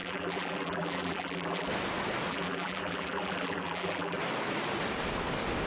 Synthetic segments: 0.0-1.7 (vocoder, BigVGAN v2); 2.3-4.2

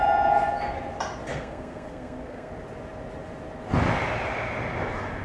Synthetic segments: 1.3-2.5 (codec, SNAC)

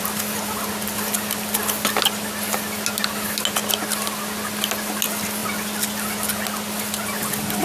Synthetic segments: none

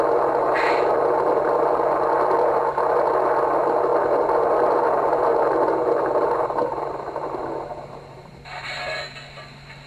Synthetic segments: 5.3-8.3 (vocoder, BigVGAN v2)

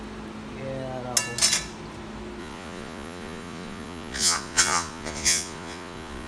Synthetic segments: 2.4-6.3 (vocoder, Vocos)

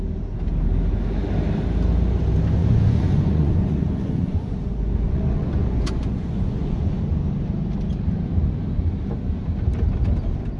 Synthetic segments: 2.6-7.0 (vocoder, Vocos)